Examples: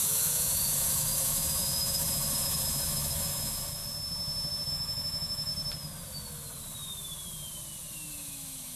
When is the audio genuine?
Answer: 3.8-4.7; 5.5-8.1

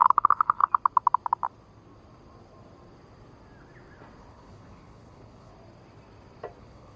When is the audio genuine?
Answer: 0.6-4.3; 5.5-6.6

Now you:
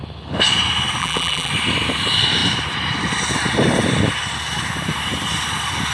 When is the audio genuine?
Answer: 0.0-1.0; 1.5-5.9